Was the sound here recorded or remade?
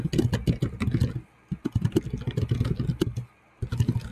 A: recorded